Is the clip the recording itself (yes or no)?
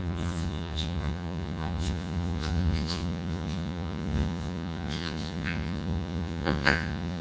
no